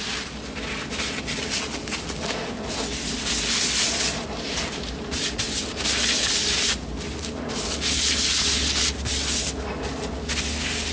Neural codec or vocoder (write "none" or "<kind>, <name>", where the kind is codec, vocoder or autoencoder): none